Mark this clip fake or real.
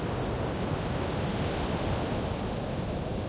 real